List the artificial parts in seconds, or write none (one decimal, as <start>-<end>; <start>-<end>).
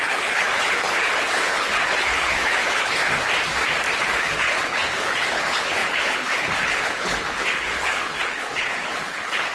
0.0-3.0; 4.0-9.5